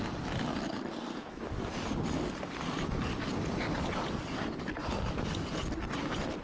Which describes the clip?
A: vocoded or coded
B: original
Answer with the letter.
B